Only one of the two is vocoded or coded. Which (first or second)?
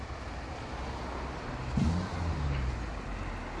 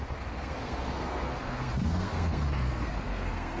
second